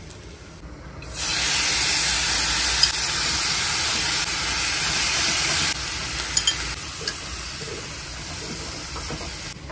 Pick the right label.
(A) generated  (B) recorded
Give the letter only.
B